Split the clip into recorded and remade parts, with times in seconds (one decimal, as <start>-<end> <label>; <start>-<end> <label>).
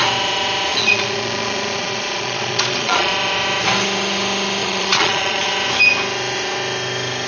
0.0-0.7 recorded; 0.7-3.1 remade; 3.1-4.6 recorded; 4.6-5.5 remade; 5.5-7.3 recorded